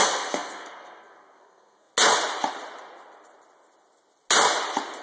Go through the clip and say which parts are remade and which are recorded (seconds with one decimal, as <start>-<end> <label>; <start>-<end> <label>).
0.0-1.9 remade; 1.9-5.0 recorded